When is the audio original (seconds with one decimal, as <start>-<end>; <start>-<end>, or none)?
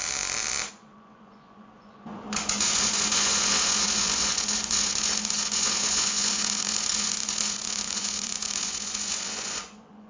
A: 0.0-0.7